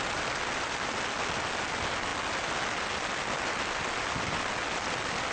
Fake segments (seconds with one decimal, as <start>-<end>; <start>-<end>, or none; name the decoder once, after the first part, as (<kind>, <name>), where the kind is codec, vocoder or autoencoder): none